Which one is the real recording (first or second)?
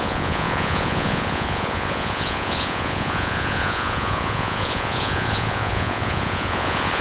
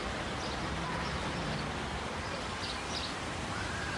second